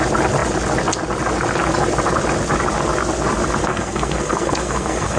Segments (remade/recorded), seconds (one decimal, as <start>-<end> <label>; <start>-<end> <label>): 0.0-3.6 recorded; 3.6-5.2 remade